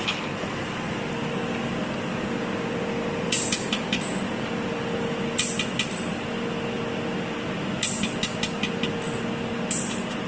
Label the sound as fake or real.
real